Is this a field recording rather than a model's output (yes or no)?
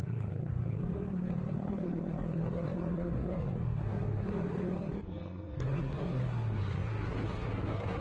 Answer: no